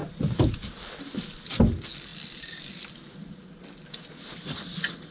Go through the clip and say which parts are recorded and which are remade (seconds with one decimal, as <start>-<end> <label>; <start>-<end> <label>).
0.0-5.1 recorded

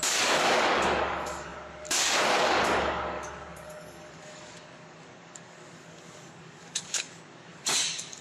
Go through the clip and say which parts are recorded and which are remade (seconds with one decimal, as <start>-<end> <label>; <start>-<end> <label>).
0.0-8.2 remade

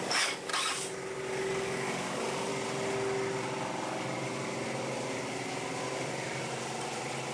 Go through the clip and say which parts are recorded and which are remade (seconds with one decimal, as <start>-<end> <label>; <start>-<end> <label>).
0.0-0.5 remade; 0.5-1.3 recorded; 1.3-2.5 remade; 2.5-7.3 recorded

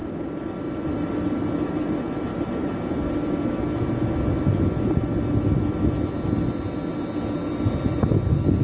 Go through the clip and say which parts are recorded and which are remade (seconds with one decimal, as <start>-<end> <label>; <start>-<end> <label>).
0.0-8.6 recorded

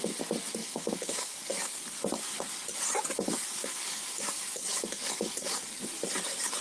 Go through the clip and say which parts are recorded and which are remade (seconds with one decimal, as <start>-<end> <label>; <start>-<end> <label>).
0.0-0.6 recorded; 0.6-1.8 remade; 1.8-3.6 recorded; 3.6-5.8 remade; 5.8-6.6 recorded

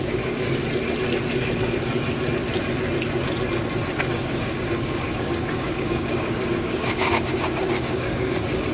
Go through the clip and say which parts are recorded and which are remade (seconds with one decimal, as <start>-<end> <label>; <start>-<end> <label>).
0.0-0.6 remade; 0.6-4.1 recorded; 4.1-8.7 remade